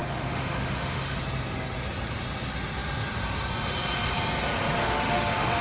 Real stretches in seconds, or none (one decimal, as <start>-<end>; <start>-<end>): 1.2-4.8